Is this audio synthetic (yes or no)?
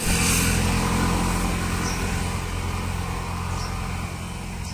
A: no